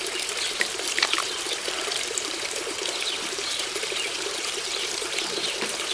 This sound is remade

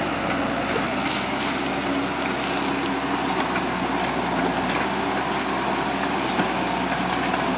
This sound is recorded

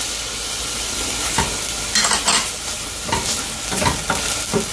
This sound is recorded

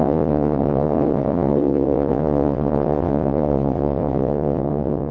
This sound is remade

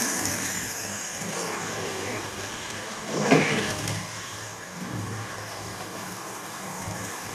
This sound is remade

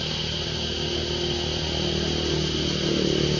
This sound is recorded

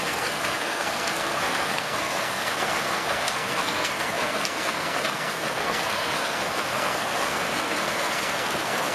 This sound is remade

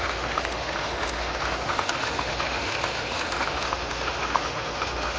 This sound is remade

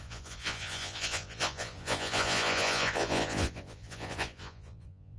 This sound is remade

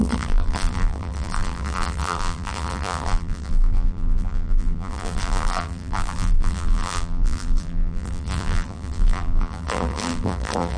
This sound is remade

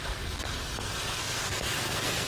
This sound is remade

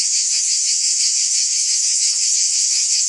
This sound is remade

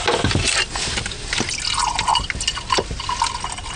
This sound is recorded